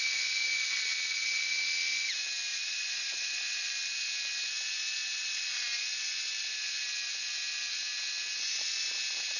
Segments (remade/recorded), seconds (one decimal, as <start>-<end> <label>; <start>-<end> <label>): 0.0-2.5 recorded; 2.5-3.7 remade; 3.7-9.4 recorded